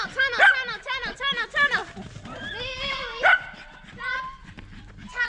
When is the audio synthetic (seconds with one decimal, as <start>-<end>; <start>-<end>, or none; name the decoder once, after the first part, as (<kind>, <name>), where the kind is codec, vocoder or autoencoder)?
none